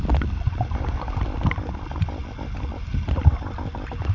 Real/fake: real